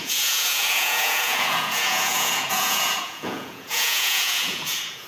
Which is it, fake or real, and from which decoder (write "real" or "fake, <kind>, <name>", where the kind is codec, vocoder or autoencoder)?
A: fake, vocoder, Vocos